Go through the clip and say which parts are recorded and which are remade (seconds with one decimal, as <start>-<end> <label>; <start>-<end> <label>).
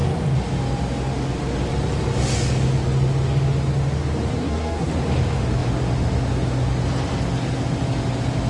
0.0-4.3 recorded; 4.3-4.9 remade; 4.9-8.5 recorded